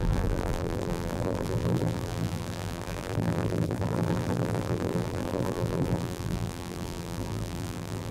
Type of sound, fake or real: fake